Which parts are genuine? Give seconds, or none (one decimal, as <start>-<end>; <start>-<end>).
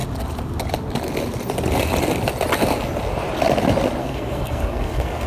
0.0-4.0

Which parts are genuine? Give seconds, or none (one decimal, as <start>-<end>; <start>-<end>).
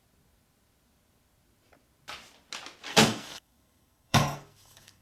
0.0-2.9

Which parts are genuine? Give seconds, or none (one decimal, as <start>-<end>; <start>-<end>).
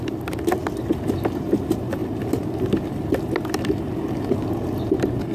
0.0-5.3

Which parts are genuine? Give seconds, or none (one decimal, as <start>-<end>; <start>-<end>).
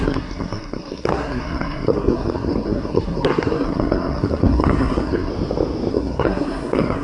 5.3-5.9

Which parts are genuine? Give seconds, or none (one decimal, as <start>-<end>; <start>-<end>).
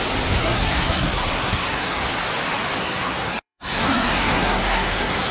0.0-0.4; 2.0-2.8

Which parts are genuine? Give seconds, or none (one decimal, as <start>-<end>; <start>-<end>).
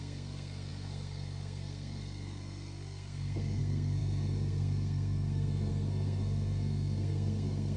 none